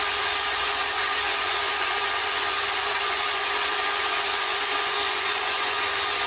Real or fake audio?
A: fake